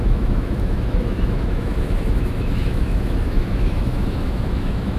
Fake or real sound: fake